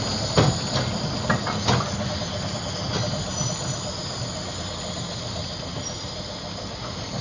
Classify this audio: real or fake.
real